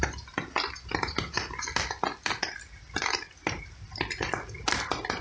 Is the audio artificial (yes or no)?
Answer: no